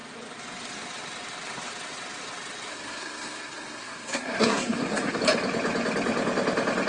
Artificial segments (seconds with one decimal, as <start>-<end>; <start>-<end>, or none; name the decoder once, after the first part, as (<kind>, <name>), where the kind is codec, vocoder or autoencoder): 2.7-5.2 (codec, SNAC)